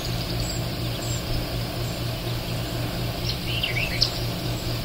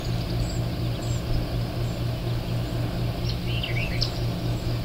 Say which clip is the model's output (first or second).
first